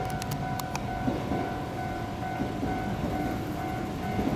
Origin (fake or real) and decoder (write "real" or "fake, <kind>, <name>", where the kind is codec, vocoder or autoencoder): real